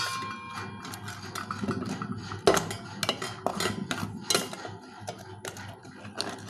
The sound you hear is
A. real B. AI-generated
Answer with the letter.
A